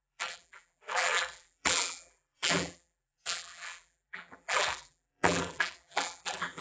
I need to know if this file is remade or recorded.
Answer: remade